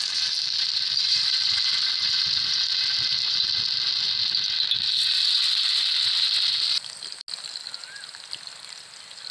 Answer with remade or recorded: recorded